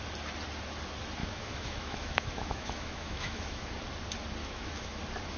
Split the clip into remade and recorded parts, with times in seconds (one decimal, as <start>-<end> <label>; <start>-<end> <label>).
0.0-1.2 recorded; 1.2-3.7 remade; 3.7-4.4 recorded; 4.4-5.0 remade; 5.0-5.4 recorded